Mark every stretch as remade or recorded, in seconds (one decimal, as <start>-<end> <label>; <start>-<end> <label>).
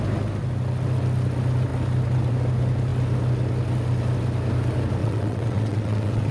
0.0-5.0 recorded; 5.0-6.3 remade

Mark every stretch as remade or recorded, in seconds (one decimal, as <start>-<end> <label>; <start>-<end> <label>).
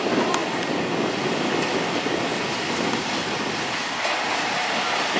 0.0-5.2 recorded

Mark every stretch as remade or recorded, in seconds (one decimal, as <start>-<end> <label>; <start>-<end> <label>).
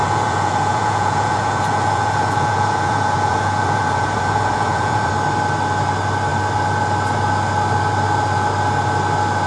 0.0-5.1 remade; 5.1-9.5 recorded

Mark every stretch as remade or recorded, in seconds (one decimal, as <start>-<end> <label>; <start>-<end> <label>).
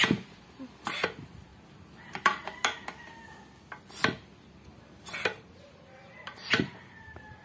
0.0-1.5 remade; 1.5-2.1 recorded; 2.1-2.6 remade; 2.6-5.1 recorded; 5.1-7.4 remade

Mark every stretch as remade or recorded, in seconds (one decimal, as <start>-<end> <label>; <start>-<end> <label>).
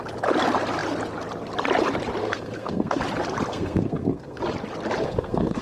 0.0-2.2 recorded; 2.2-3.0 remade; 3.0-3.5 recorded; 3.5-4.4 remade; 4.4-5.0 recorded; 5.0-5.6 remade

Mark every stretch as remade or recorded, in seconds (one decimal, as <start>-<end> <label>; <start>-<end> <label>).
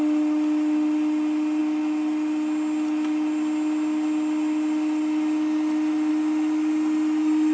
0.0-7.5 recorded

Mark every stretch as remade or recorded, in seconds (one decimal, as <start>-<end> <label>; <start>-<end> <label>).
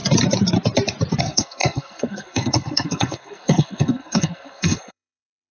0.0-1.2 recorded; 1.2-5.5 remade